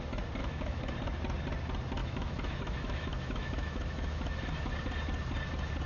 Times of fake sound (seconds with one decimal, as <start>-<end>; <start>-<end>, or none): 0.4-0.9; 2.0-4.7